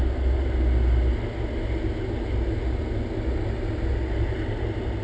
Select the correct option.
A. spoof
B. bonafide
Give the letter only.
B